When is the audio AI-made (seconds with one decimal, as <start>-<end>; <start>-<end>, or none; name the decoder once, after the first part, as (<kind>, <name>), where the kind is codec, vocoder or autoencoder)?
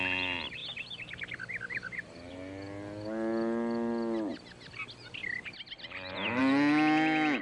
0.6-2.3 (vocoder, BigVGAN v2); 4.3-6.4